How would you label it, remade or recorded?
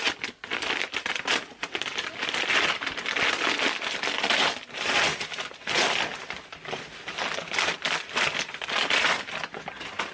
recorded